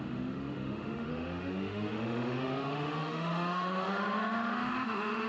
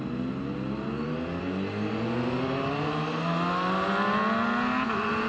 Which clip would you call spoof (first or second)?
first